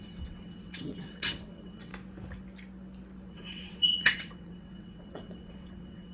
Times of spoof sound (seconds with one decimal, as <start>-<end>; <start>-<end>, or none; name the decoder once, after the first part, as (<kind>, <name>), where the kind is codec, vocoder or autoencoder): 0.0-1.9 (vocoder, WaveNeXt); 3.3-6.1